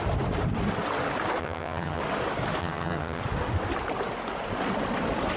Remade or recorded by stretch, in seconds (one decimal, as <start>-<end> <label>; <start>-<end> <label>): 0.0-1.4 recorded; 1.4-2.0 remade; 2.0-2.6 recorded; 2.6-3.2 remade; 3.2-5.4 recorded